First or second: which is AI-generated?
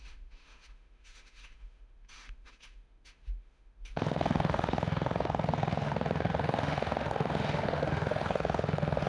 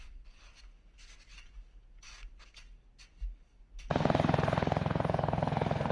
first